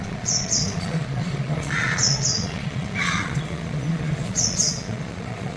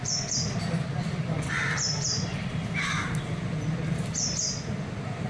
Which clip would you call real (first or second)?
second